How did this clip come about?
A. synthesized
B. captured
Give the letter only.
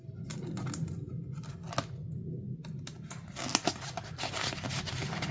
B